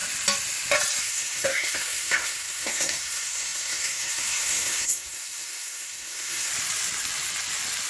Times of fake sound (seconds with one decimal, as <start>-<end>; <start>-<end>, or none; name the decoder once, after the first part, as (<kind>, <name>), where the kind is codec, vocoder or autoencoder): 1.0-6.5 (codec, SNAC)